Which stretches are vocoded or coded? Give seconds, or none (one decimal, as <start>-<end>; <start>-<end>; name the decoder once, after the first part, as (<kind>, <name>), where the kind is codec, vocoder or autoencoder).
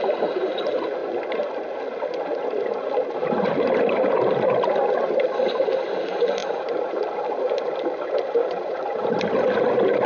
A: 6.4-7.5 (vocoder, BigVGAN v2); 8.4-9.2